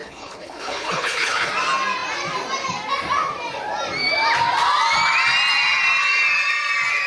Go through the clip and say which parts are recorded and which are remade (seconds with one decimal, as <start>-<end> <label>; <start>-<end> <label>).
0.0-1.5 remade; 1.5-7.1 recorded